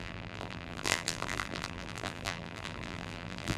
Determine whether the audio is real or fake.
fake